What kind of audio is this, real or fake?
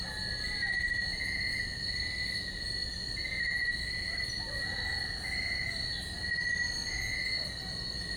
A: real